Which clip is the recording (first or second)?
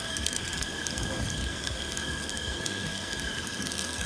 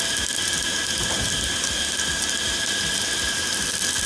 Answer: second